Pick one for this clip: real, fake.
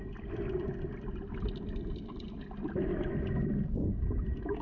real